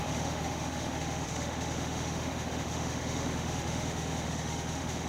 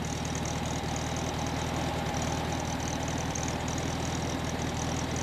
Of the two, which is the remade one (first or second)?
first